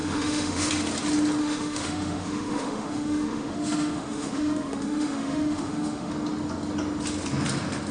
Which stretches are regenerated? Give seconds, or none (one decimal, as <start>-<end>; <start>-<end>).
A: 0.0-0.7; 1.4-6.1